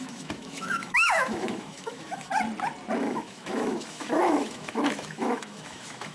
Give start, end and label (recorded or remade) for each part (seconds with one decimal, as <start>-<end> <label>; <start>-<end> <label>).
0.0-2.3 remade; 2.3-3.0 recorded; 3.0-6.1 remade